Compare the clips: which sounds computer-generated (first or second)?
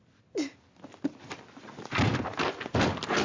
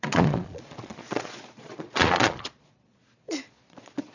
second